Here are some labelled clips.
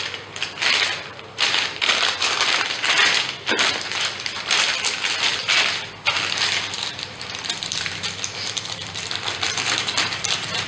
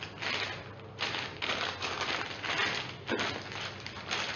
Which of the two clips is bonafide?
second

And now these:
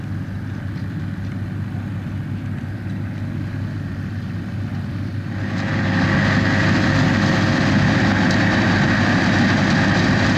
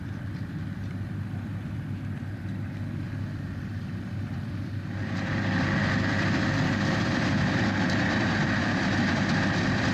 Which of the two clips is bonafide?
first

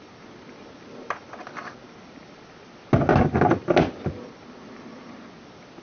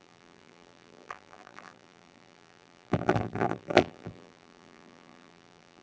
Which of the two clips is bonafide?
first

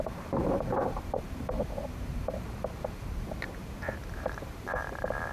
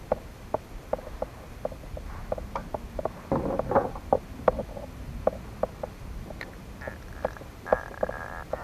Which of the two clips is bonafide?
second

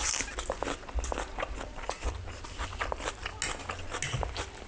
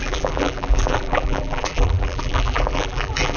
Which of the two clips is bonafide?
first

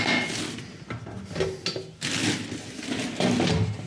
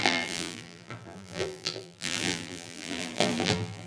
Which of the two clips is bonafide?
first